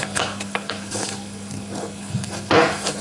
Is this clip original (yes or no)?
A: no